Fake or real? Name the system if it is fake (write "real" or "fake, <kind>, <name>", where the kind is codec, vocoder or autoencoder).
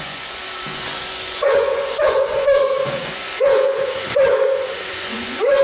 fake, vocoder, Vocos